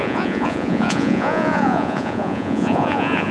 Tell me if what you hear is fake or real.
fake